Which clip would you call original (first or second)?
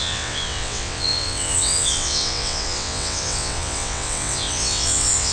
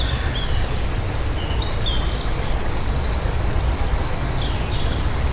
second